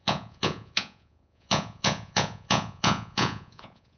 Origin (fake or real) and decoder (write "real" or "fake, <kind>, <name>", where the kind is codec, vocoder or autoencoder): fake, vocoder, Vocos